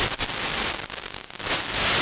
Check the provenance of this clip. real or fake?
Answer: real